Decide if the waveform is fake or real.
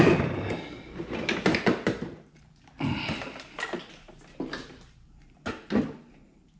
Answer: real